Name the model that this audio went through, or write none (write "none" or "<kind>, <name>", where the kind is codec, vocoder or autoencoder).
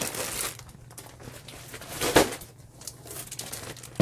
none